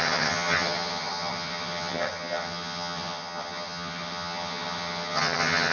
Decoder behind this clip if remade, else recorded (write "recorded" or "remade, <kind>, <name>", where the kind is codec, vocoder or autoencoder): remade, vocoder, HiFi-GAN